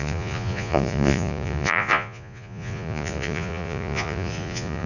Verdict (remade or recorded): remade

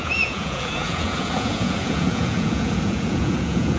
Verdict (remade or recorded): remade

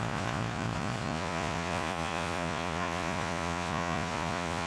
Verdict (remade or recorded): remade